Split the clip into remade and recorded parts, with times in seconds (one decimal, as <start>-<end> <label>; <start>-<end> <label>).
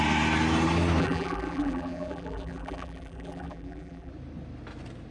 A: 0.0-1.0 recorded; 1.0-4.1 remade; 4.1-5.1 recorded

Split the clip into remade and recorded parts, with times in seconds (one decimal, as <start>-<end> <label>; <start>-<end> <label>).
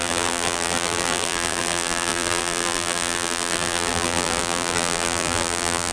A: 0.0-5.9 remade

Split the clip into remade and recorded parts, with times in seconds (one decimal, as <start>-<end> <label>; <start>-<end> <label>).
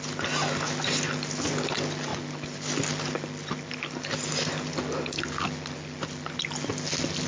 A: 0.0-7.3 recorded